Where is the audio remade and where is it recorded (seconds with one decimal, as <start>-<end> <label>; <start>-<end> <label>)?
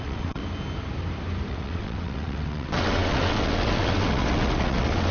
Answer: 0.0-0.4 remade; 0.4-1.5 recorded; 1.5-5.1 remade